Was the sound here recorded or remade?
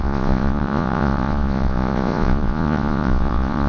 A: remade